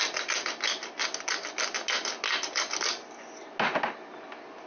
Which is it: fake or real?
real